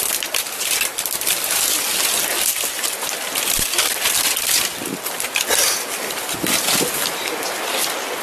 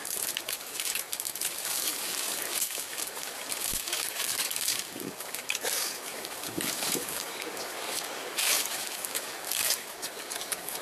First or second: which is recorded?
first